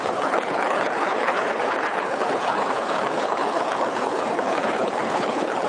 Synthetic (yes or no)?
yes